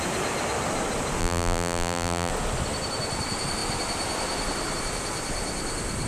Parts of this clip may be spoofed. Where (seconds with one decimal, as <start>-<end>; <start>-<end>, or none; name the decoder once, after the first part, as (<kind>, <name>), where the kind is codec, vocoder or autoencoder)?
1.2-2.3 (vocoder, BigVGAN v2)